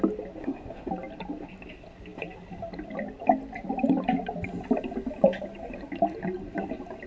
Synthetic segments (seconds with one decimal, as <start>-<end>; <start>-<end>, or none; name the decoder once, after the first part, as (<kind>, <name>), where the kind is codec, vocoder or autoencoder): 0.4-0.9 (codec, SNAC)